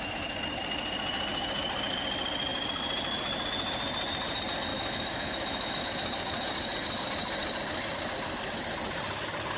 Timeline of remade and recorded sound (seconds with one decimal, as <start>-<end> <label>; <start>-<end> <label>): 0.0-4.7 recorded; 4.7-5.8 remade; 5.8-9.6 recorded

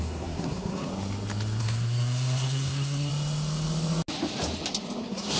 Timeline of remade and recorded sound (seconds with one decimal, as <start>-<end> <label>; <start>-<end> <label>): 0.0-0.9 remade; 0.9-1.6 recorded; 1.6-3.1 remade; 3.1-5.0 recorded; 5.0-5.4 remade